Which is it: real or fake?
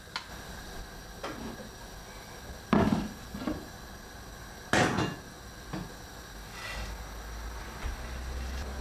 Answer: real